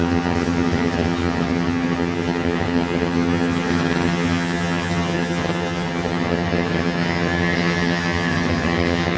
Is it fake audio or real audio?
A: fake